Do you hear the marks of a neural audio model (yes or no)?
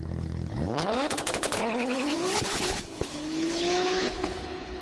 yes